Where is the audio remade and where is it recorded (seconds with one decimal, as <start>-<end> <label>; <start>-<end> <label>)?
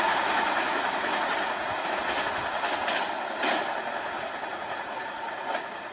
0.0-2.0 remade; 2.0-4.5 recorded; 4.5-5.9 remade